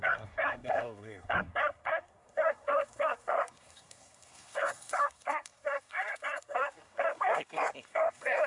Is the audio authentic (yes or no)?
no